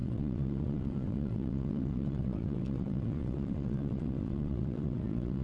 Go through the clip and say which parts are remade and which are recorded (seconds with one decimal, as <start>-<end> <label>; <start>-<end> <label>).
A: 0.0-5.4 remade

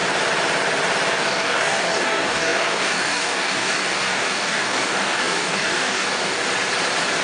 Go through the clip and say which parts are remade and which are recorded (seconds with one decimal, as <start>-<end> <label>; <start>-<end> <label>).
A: 0.0-1.2 recorded; 1.2-6.4 remade; 6.4-7.2 recorded

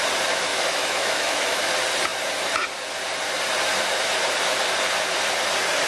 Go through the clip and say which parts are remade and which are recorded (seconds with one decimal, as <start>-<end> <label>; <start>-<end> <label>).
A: 0.0-0.5 recorded; 0.5-1.7 remade; 1.7-5.9 recorded